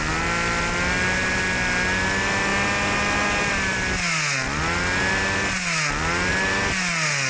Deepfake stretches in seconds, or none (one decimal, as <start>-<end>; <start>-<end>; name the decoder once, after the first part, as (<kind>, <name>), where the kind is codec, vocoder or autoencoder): none